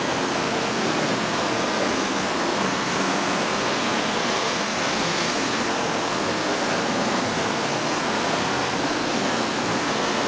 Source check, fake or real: fake